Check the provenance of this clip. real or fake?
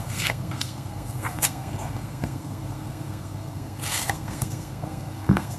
fake